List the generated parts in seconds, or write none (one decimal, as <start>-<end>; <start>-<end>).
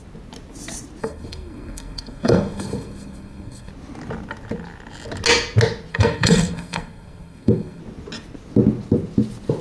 1.0-3.7; 5.9-7.8